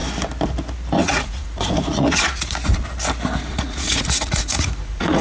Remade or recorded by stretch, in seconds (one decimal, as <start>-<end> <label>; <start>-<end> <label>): 0.0-1.0 recorded; 1.0-2.5 remade; 2.5-3.5 recorded; 3.5-5.2 remade